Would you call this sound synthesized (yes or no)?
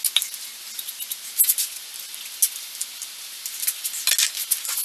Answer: no